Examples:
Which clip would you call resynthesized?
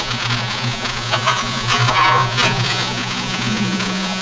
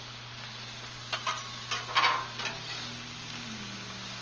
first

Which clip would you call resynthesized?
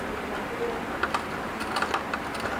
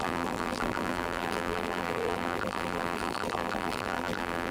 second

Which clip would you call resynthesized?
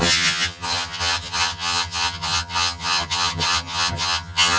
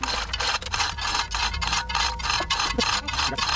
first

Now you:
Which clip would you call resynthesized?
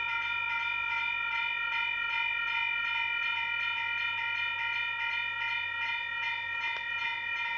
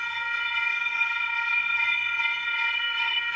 second